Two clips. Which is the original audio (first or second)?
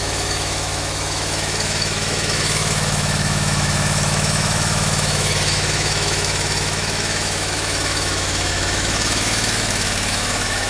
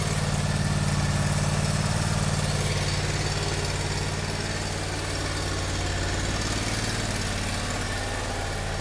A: second